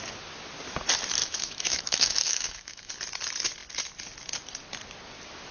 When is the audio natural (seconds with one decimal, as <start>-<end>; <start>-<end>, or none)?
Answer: 0.0-1.2; 2.9-5.5